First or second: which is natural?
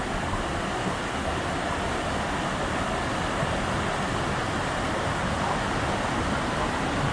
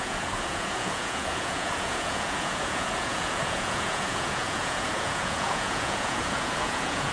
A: first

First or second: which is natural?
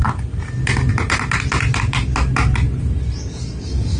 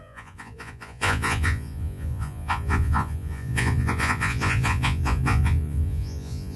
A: first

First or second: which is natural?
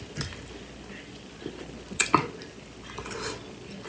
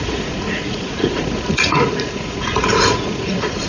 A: first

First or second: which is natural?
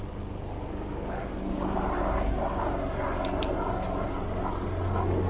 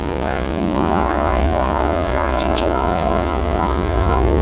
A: first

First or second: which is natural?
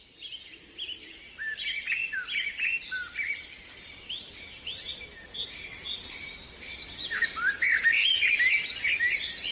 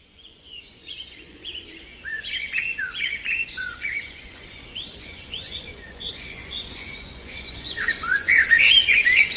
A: first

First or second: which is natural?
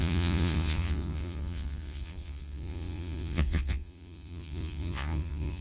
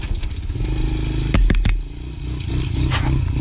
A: second